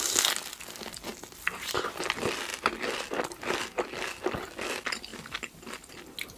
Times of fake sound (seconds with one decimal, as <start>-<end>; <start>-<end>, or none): none